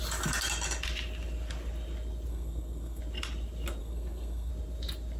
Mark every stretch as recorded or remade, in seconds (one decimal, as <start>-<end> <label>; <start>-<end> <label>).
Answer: 0.0-2.3 recorded; 2.3-3.0 remade; 3.0-3.8 recorded; 3.8-4.5 remade; 4.5-5.2 recorded